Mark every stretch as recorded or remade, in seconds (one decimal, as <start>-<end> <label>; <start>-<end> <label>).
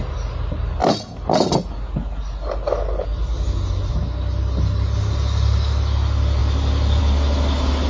0.0-7.9 recorded